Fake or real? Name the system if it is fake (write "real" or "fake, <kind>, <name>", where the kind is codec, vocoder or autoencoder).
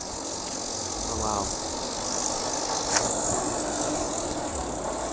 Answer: real